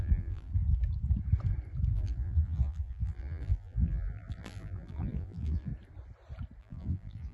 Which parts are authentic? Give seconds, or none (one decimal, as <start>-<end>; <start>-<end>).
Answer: 0.5-1.9; 5.7-6.6